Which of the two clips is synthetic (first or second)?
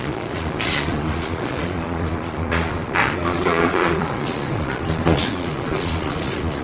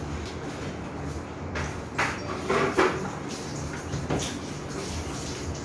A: first